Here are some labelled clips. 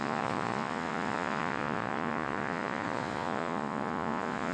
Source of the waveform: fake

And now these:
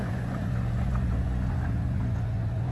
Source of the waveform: fake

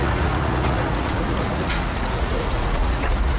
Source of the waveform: fake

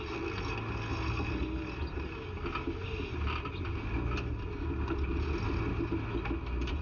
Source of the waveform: real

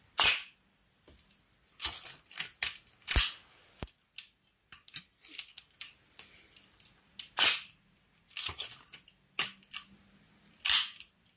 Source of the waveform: real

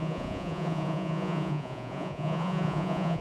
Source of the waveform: fake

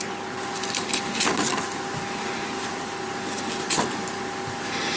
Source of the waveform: real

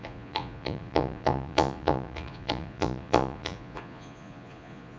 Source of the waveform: fake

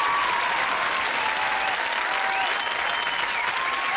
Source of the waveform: real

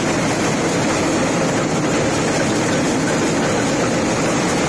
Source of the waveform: real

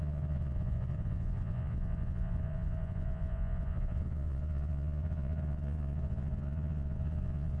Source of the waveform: fake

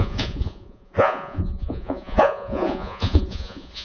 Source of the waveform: fake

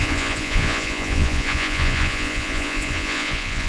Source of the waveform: fake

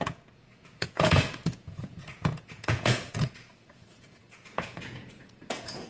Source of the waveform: fake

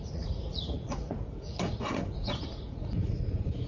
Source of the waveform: fake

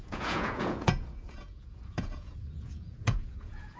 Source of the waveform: fake